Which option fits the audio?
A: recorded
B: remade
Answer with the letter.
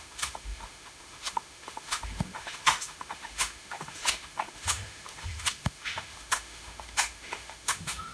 B